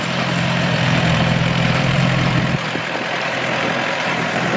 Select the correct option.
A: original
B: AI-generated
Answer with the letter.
B